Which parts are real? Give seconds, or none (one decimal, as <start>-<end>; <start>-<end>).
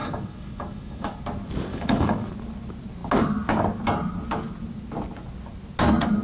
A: 1.2-1.7; 2.3-6.2